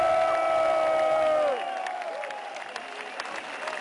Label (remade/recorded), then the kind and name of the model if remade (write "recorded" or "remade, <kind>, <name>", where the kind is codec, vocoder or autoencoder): recorded